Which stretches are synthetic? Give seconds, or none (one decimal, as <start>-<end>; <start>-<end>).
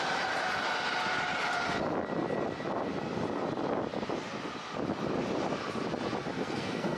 6.4-7.0